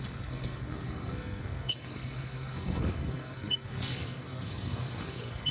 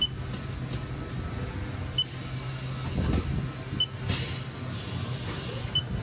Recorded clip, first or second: second